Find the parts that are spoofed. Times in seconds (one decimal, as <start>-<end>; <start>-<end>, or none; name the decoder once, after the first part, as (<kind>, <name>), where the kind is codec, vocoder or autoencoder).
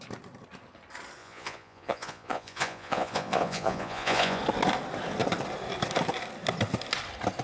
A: 1.2-4.4 (vocoder, Vocos)